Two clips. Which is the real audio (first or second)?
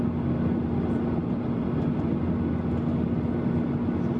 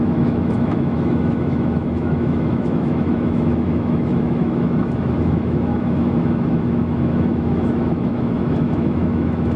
first